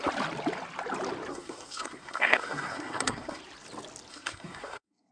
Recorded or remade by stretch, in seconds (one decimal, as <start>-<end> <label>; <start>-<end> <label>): 0.0-1.3 recorded; 1.3-3.4 remade; 3.4-4.1 recorded; 4.1-5.1 remade